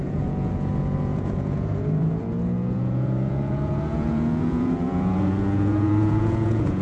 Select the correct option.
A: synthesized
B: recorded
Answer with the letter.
A